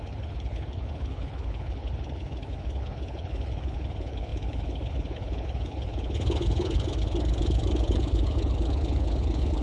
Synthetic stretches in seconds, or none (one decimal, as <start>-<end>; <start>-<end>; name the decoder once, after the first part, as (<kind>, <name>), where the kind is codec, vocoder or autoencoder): 0.0-9.6 (codec, HILCodec)